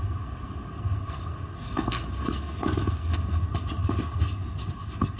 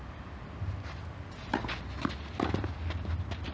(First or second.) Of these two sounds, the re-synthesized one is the first